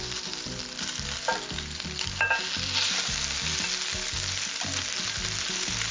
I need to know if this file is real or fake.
real